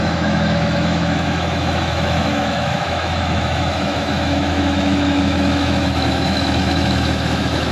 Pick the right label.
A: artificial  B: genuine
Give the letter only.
A